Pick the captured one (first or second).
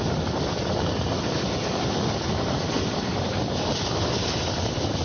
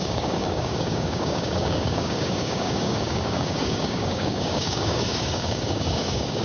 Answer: first